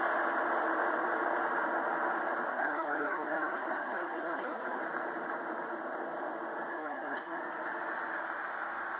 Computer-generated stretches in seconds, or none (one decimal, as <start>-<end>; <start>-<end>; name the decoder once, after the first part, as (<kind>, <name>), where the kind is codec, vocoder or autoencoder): 2.5-4.8 (codec, SNAC); 6.7-7.4